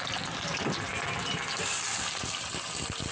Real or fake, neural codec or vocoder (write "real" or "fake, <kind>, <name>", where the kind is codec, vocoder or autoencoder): real